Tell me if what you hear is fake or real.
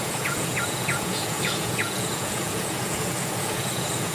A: fake